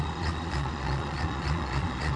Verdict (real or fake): fake